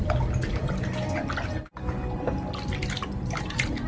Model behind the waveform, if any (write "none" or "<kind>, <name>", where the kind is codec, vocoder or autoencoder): none